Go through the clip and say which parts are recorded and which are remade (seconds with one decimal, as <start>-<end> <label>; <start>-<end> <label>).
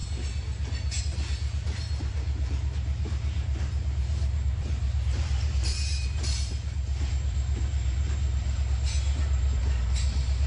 0.0-1.0 recorded; 1.0-10.5 remade